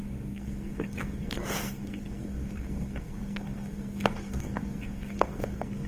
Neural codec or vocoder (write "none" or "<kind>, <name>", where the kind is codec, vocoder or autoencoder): codec, SNAC